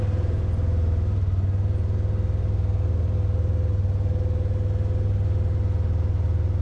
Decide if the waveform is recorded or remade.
recorded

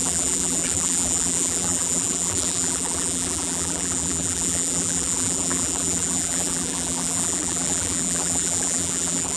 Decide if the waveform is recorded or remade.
remade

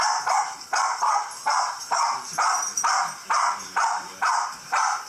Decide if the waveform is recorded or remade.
remade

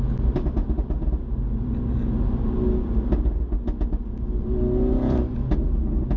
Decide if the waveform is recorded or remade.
recorded